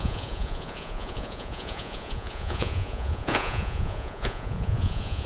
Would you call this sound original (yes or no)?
no